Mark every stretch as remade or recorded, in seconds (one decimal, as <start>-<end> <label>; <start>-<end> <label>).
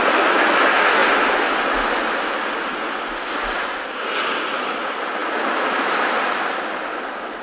0.0-5.2 recorded; 5.2-6.4 remade; 6.4-7.4 recorded